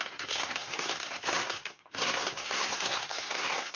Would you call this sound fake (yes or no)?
yes